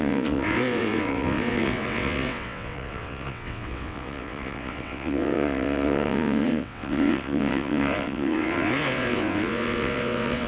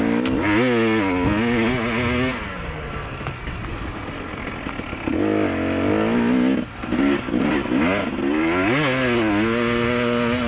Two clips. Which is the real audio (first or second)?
second